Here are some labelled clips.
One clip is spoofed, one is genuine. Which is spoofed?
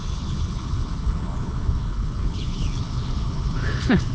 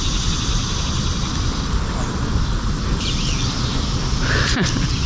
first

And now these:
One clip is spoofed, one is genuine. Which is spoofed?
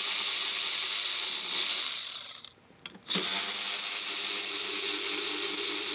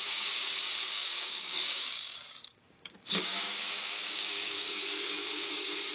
second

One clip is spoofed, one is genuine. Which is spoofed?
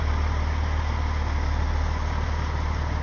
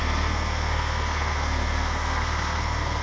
second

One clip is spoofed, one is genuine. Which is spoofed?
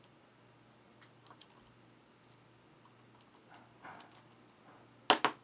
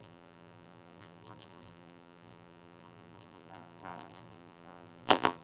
second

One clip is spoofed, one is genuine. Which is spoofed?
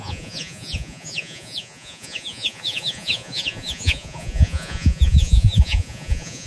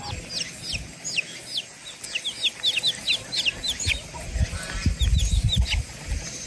first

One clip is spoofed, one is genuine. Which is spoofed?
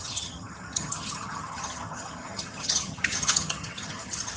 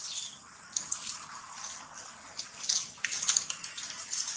first